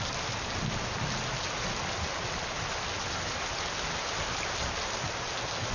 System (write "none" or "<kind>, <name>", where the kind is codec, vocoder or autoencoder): none